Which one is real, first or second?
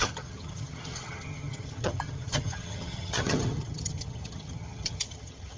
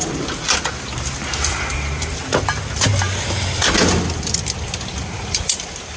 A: second